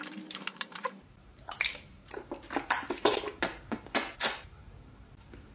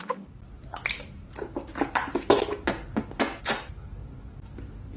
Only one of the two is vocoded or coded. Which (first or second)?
first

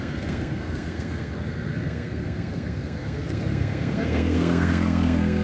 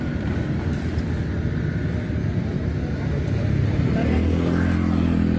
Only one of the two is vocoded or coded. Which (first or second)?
first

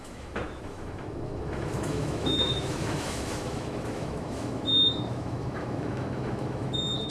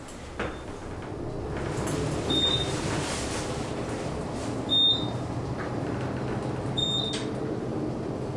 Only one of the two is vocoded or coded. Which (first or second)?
first